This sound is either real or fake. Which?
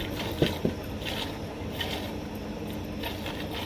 real